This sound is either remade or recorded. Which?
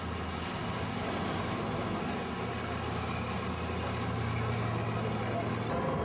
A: recorded